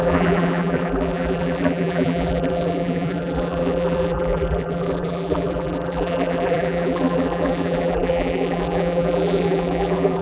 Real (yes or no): no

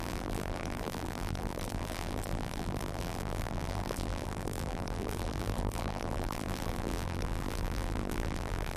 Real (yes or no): no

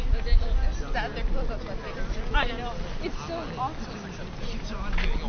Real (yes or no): yes